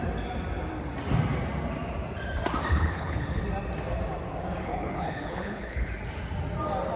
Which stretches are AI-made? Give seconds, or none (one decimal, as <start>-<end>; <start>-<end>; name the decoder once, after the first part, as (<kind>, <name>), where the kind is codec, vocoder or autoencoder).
2.7-3.4 (codec, HILCodec); 4.7-5.9